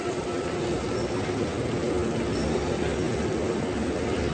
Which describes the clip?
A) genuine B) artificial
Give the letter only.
A